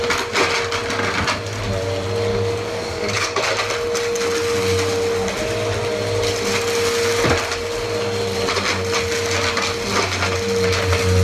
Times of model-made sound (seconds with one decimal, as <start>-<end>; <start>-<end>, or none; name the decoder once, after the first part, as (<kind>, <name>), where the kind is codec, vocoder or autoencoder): 2.3-3.5 (codec, DAC)